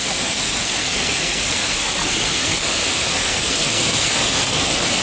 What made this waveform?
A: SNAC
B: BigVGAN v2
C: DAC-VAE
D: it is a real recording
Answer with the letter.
A